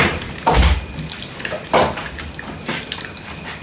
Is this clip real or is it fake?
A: real